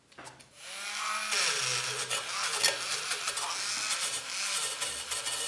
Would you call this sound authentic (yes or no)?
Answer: yes